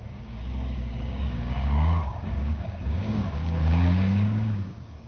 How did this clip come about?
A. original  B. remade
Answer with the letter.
B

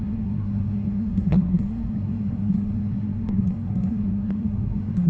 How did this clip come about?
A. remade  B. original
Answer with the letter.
A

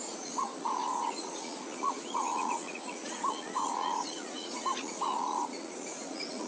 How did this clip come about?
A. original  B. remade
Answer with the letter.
B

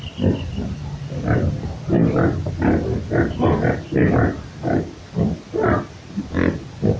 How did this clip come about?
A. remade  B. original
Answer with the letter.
B